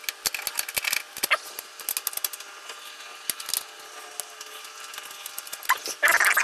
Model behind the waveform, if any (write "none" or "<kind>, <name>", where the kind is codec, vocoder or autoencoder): none